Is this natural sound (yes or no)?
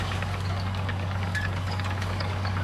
no